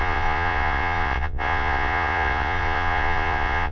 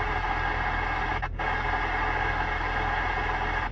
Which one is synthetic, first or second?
first